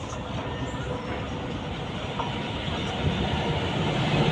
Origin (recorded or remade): recorded